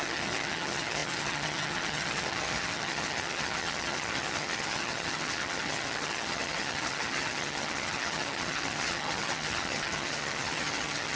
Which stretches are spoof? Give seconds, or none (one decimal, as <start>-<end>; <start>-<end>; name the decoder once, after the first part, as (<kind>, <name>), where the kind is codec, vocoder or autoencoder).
0.0-11.2 (vocoder, HiFi-GAN)